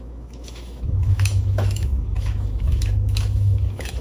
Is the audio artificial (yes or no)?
yes